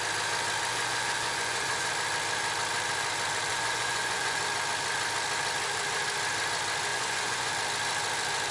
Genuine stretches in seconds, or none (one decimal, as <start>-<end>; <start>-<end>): 0.0-0.7; 1.9-3.5; 4.4-6.9; 7.5-8.5